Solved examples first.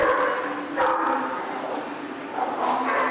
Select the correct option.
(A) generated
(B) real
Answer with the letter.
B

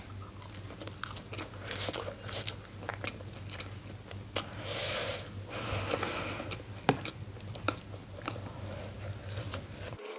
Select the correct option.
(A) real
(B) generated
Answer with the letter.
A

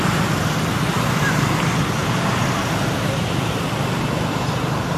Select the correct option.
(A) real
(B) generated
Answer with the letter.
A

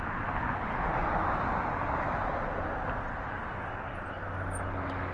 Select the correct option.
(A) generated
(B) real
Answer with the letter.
B